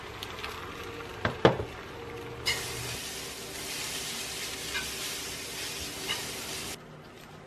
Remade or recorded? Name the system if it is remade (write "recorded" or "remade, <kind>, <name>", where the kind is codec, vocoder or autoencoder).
remade, vocoder, BigVGAN v2